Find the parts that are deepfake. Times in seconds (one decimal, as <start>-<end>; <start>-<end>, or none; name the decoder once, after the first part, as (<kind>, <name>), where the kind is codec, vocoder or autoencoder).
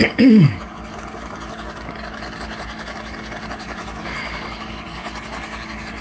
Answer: 0.0-6.0 (codec, DAC)